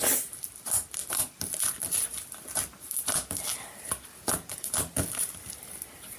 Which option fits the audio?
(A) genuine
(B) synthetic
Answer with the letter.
A